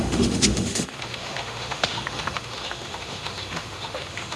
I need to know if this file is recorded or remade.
remade